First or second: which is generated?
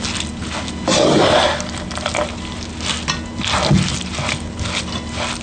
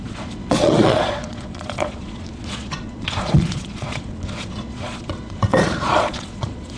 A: second